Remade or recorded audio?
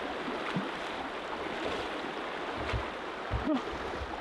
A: recorded